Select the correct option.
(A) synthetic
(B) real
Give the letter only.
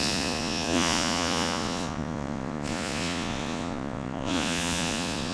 A